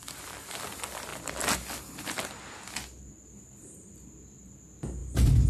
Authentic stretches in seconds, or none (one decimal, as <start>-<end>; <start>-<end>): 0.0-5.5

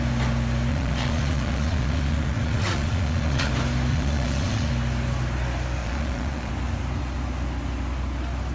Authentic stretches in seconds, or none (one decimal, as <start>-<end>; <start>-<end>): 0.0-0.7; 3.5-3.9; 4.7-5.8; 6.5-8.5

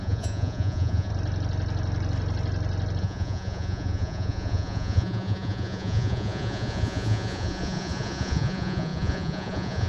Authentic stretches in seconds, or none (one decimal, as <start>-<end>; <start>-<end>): 1.1-3.0